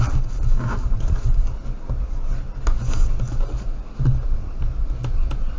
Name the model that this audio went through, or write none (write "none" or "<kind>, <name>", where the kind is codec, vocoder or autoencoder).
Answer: none